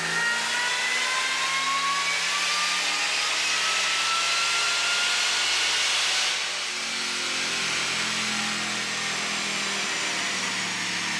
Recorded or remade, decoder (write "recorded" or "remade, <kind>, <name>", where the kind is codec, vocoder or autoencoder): recorded